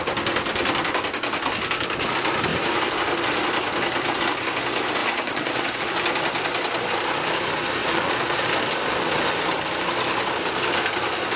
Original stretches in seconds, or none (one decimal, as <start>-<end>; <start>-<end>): 0.0-5.0; 5.8-7.8; 8.5-11.4